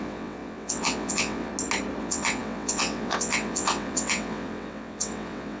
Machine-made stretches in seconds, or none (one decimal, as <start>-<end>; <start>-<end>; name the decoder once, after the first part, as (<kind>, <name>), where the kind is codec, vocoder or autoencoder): 0.0-1.5 (vocoder, WaveNeXt); 2.0-5.6